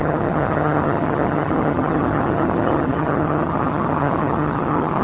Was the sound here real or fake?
fake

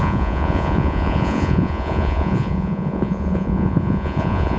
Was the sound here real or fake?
fake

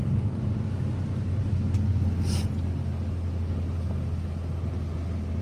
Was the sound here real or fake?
real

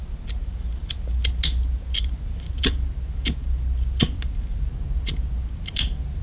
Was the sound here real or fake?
real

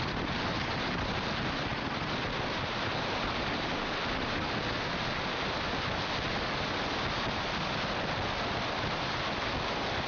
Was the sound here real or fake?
real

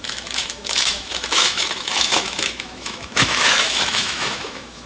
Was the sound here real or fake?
fake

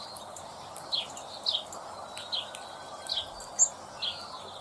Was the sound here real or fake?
real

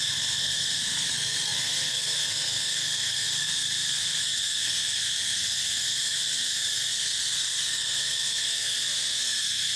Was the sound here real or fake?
fake